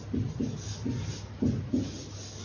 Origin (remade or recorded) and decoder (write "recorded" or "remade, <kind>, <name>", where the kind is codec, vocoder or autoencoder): recorded